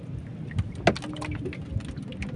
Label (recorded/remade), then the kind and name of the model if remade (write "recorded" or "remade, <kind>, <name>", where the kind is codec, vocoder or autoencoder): recorded